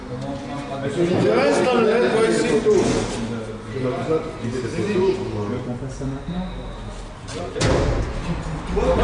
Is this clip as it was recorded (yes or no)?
yes